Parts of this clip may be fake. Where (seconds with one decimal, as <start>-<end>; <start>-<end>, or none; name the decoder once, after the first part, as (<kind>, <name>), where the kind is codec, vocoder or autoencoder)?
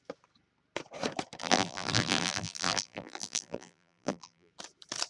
1.4-4.5 (vocoder, BigVGAN v2)